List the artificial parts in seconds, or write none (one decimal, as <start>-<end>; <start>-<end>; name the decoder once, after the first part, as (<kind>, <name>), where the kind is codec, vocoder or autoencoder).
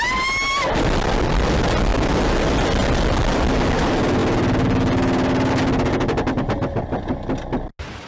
none